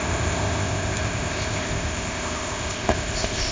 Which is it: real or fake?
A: fake